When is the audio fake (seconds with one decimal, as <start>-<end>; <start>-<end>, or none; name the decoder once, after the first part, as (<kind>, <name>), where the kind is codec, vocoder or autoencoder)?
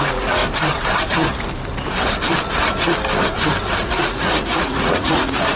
0.0-0.4 (vocoder, Vocos); 3.8-5.6